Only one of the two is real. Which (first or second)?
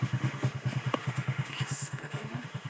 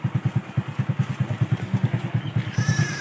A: second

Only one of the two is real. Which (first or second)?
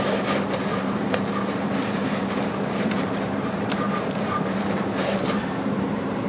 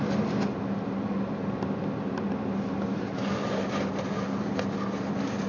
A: second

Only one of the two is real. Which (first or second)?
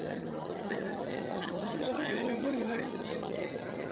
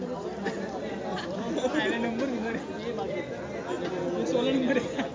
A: second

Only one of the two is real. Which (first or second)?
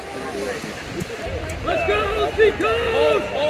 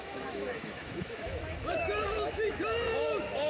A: first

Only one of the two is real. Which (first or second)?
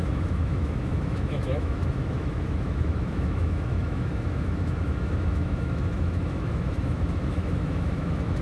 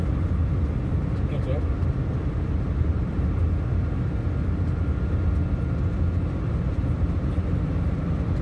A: second